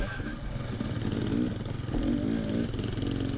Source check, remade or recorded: recorded